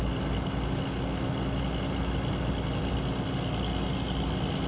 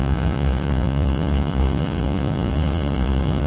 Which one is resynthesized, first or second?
second